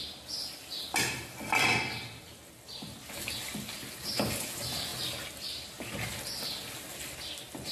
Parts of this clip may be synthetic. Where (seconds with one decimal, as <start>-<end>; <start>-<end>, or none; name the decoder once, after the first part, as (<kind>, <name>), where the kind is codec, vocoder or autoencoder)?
none